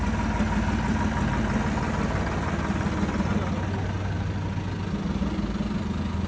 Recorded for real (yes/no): yes